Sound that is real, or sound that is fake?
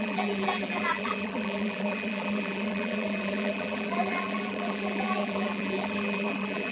fake